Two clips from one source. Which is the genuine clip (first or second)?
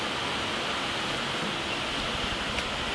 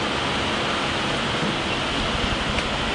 second